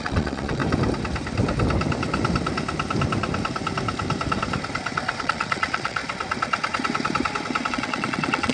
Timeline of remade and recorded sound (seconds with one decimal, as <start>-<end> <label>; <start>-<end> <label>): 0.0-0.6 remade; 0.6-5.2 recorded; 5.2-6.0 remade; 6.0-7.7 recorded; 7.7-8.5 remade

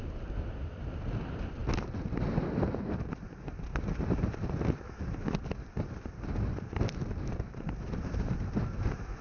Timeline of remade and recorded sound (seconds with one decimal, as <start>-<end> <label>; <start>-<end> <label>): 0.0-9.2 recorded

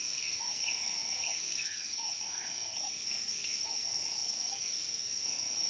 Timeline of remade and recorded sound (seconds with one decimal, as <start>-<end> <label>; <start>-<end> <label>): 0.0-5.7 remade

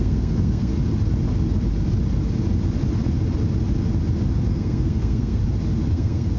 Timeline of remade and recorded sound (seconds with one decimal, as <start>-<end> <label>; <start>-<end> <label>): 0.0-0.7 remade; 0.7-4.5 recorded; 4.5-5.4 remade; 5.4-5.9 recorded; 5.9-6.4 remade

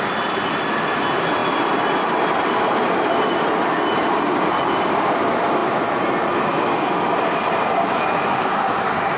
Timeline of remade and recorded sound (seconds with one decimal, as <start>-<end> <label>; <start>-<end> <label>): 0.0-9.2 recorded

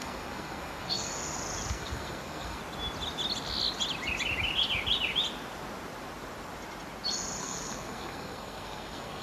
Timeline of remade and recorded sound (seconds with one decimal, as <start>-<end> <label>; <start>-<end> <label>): 0.0-1.1 remade; 1.1-1.7 recorded; 1.7-2.6 remade; 2.6-7.4 recorded; 7.4-9.2 remade